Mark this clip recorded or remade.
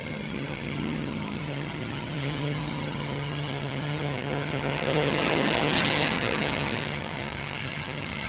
remade